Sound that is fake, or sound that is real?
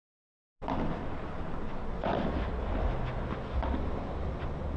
real